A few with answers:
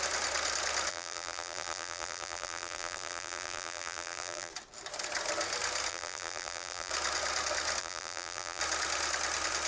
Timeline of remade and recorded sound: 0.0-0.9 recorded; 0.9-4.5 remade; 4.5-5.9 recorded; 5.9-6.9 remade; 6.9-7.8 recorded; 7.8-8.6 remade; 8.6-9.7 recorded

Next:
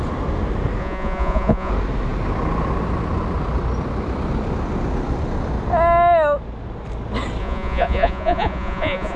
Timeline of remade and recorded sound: 0.0-0.8 recorded; 0.8-1.7 remade; 1.7-7.4 recorded; 7.4-9.2 remade

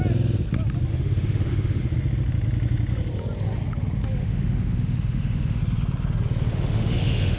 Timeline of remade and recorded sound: 0.0-0.9 recorded; 0.9-1.8 remade; 1.8-4.2 recorded; 4.2-5.6 remade; 5.6-6.5 recorded; 6.5-7.4 remade

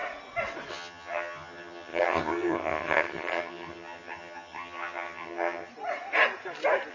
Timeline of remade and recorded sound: 0.0-0.7 recorded; 0.7-5.7 remade; 5.7-6.9 recorded

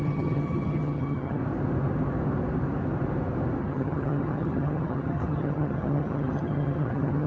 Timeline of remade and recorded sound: 0.0-1.4 remade; 1.4-3.6 recorded; 3.6-7.3 remade

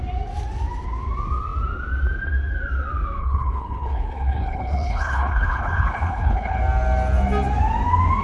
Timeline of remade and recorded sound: 0.0-3.2 recorded; 3.2-6.6 remade; 6.6-8.2 recorded

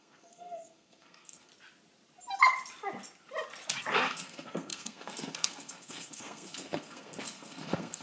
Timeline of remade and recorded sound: 0.0-1.5 remade; 1.5-3.9 recorded; 3.9-8.0 remade